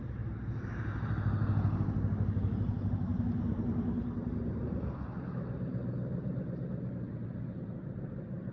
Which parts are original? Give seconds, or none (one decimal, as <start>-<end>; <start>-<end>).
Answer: 0.0-8.5